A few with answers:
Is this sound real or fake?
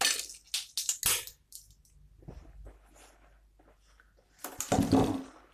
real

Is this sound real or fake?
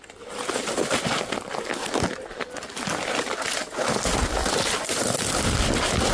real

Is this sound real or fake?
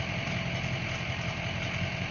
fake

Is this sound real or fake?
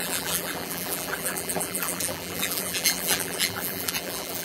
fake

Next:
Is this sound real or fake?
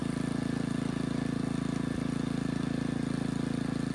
real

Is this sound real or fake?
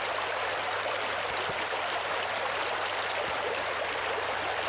fake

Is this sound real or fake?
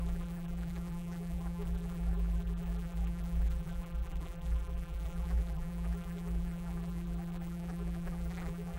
fake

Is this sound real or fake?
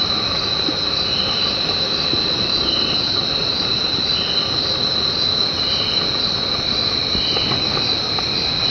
real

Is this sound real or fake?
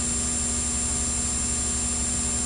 real